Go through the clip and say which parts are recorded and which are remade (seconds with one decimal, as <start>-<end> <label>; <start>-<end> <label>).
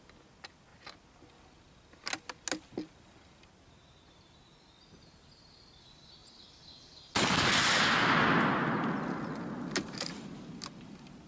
0.0-11.3 recorded